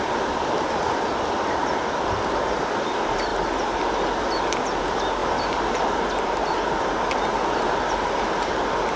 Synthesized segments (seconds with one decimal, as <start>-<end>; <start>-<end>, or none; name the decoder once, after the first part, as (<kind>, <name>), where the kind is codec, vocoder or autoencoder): none